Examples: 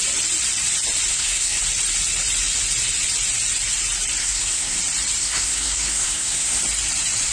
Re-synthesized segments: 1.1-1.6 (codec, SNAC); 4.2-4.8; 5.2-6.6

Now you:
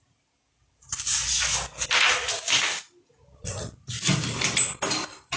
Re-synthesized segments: none

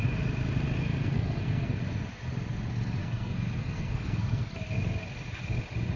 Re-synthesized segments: 0.9-1.8 (codec, SNAC); 3.0-4.5

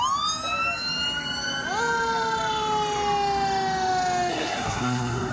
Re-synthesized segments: 4.3-5.3 (codec, SNAC)

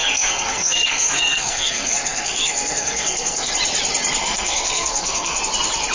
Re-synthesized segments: 0.0-3.5 (codec, SNAC); 4.2-5.4

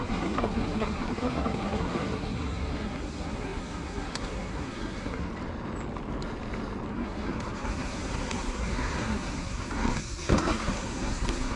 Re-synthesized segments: 0.0-5.3 (codec, SNAC); 6.9-11.6

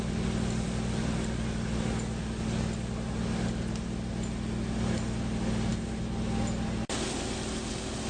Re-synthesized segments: none

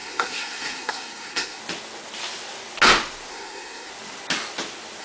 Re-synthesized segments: 0.0-1.6 (codec, SNAC); 3.3-3.9